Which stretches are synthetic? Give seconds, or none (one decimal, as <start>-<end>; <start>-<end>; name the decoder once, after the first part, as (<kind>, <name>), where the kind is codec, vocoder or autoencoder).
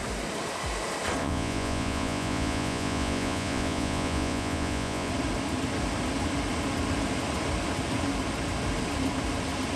1.2-5.1 (vocoder, Vocos)